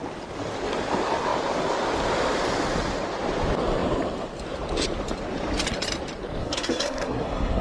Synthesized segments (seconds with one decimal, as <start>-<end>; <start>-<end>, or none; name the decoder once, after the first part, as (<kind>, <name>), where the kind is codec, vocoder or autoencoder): 6.4-7.6 (codec, SNAC)